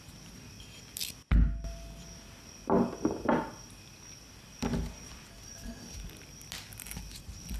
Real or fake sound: real